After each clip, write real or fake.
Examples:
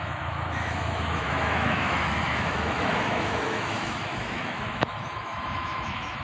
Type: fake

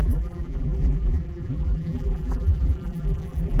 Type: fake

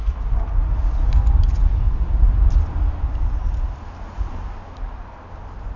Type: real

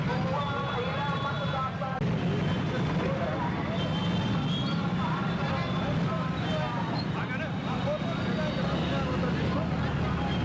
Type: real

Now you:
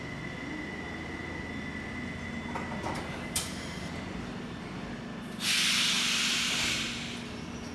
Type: real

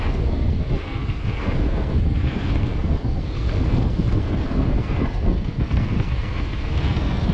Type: fake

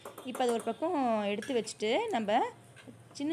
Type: real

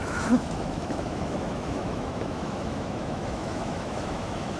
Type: fake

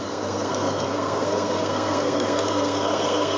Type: fake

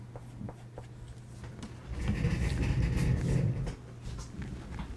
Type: real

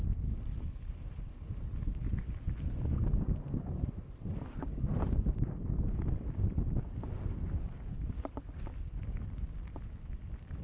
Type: real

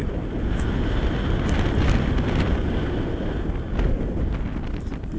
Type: real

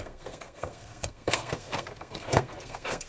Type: fake